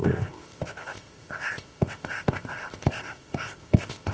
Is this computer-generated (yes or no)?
yes